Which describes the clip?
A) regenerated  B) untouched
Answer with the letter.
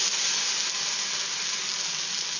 B